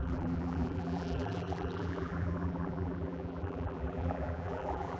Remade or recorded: remade